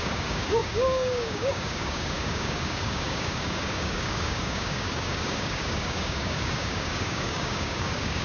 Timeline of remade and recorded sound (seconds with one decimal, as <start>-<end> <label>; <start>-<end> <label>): 0.0-8.2 remade

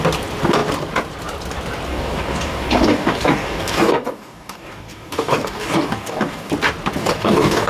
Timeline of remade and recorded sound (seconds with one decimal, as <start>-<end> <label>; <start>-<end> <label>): 0.0-1.9 recorded; 1.9-6.5 remade; 6.5-7.0 recorded; 7.0-7.7 remade

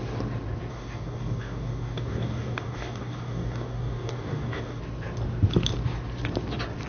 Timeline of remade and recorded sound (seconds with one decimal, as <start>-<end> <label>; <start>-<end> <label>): 0.0-0.7 recorded; 0.7-4.8 remade; 4.8-6.9 recorded

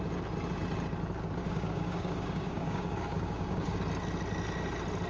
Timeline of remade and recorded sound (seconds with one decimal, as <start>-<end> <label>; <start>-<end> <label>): 0.0-1.4 recorded; 1.4-3.8 remade; 3.8-5.1 recorded

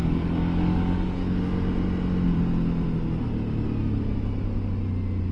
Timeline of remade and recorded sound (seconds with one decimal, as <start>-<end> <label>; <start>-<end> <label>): 0.0-1.4 remade; 1.4-5.3 recorded

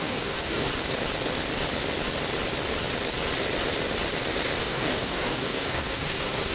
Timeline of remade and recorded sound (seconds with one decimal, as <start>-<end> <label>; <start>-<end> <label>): 0.0-0.7 remade; 0.7-4.6 recorded; 4.6-6.5 remade

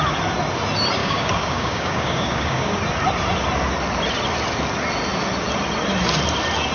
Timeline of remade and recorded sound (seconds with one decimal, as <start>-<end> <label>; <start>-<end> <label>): 0.0-1.0 recorded; 1.0-2.7 remade; 2.7-6.7 recorded